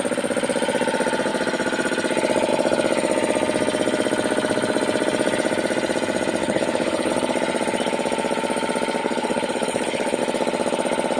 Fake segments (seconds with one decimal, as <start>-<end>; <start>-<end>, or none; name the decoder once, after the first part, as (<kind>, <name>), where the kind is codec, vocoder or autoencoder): 6.4-7.1 (codec, HILCodec); 9.0-10.2